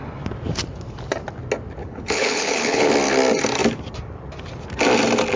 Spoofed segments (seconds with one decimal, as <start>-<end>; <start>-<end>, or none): 1.8-2.9